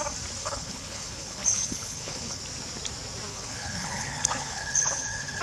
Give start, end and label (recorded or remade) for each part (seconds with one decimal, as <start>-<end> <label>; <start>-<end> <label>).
0.0-0.4 recorded; 0.4-2.4 remade; 2.4-3.3 recorded; 3.3-5.4 remade